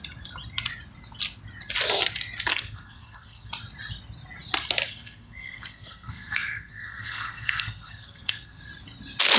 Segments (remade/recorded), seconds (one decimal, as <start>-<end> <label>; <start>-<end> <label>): 0.0-2.5 recorded; 2.5-3.5 remade; 3.5-4.9 recorded; 4.9-8.6 remade; 8.6-9.4 recorded